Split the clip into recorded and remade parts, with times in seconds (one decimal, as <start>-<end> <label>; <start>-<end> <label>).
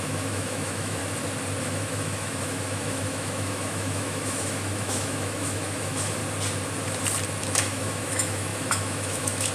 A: 0.0-1.0 remade; 1.0-1.6 recorded; 1.6-6.2 remade; 6.2-7.4 recorded; 7.4-9.5 remade